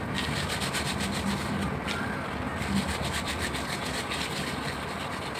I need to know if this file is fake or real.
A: real